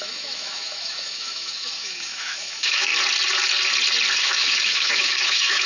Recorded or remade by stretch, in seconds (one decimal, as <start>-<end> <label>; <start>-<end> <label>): 0.0-2.9 remade; 2.9-4.2 recorded; 4.2-5.7 remade